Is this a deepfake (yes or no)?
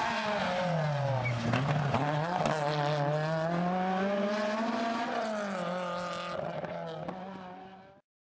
no